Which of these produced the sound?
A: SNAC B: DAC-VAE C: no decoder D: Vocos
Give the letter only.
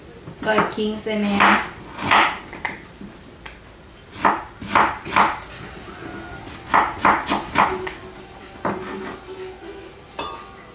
C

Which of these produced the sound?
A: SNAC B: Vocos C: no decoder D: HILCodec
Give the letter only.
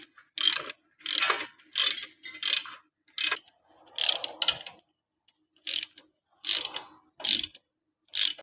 C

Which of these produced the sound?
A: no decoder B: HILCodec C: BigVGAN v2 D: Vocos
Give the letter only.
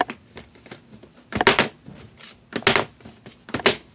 A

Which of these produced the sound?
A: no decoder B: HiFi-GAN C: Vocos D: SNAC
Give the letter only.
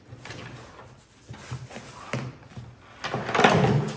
A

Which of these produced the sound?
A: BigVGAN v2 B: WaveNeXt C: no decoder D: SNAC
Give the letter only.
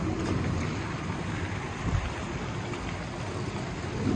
C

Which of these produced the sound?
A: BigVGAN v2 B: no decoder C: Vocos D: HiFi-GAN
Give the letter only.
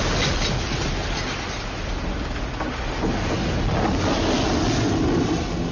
B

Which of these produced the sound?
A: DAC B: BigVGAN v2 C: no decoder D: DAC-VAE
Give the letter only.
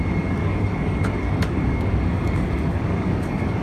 A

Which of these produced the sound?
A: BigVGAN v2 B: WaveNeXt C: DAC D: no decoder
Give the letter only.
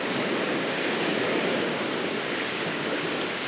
C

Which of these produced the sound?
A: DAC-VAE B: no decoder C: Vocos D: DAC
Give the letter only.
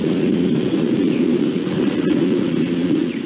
C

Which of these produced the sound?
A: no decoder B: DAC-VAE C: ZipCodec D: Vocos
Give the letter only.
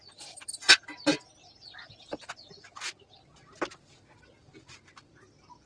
A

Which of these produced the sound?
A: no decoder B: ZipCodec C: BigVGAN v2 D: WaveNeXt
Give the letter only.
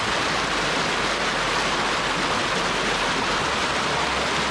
A